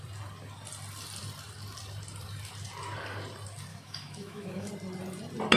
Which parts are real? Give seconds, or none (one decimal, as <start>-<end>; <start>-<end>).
0.0-3.7; 4.7-5.6